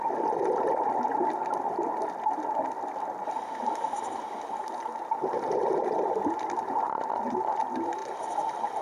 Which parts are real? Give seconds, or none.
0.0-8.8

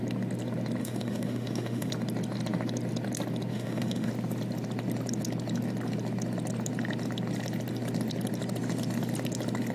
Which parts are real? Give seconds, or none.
0.0-0.8; 1.9-3.5; 4.1-9.7